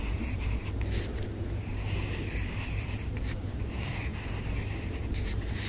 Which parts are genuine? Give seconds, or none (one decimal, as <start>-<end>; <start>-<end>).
0.6-1.4; 4.1-4.8